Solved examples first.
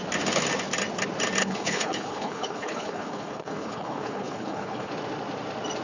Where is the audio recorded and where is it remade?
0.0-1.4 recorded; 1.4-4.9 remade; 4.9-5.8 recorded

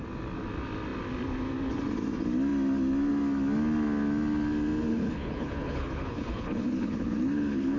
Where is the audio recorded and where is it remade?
0.0-4.9 recorded; 4.9-7.8 remade